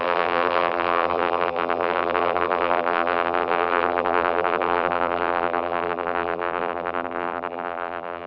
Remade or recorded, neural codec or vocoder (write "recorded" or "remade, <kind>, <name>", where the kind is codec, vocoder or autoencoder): remade, vocoder, BigVGAN v2